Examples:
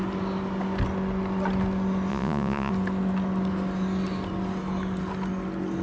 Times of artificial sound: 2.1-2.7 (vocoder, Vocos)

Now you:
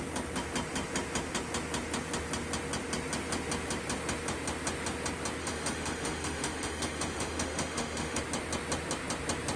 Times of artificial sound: 5.4-8.2 (autoencoder, DAC-VAE)

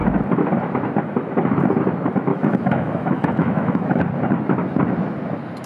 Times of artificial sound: 2.3-4.0 (autoencoder, DAC-VAE)

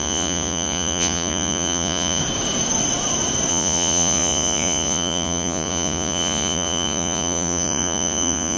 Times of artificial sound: 0.0-2.2 (vocoder, Vocos); 3.5-8.6